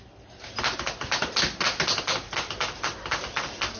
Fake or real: real